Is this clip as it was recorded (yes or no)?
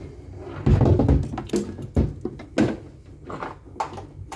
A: yes